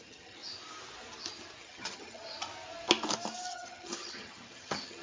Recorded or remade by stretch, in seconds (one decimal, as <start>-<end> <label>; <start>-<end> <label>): 0.0-0.4 remade; 0.4-1.6 recorded; 1.6-2.2 remade; 2.2-3.5 recorded; 3.5-5.0 remade